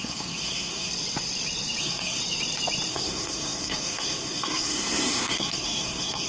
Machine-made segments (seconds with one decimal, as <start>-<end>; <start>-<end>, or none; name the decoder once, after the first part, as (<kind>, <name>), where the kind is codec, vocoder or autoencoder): 0.0-0.9 (codec, SNAC); 1.8-2.2; 2.9-6.3